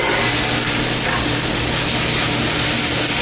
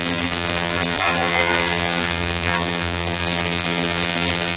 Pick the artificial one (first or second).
second